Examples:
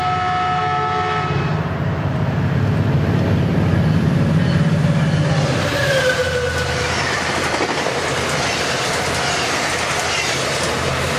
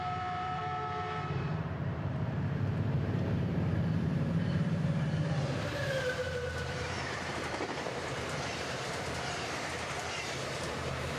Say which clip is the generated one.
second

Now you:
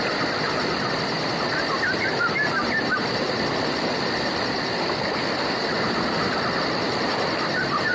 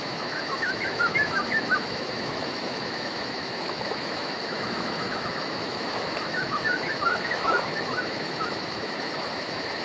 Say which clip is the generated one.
second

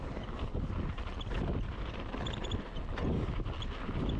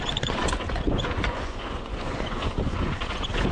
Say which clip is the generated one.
second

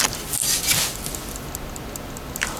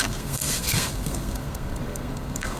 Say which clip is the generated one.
second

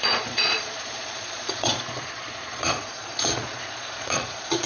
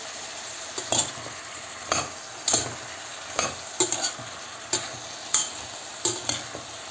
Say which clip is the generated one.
first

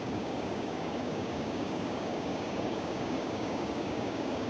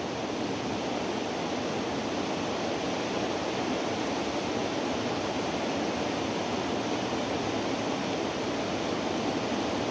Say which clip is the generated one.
first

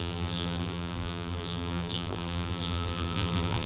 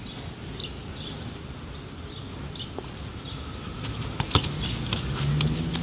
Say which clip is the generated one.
first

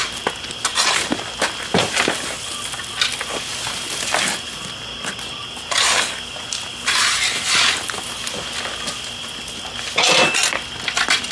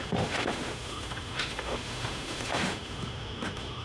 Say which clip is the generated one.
second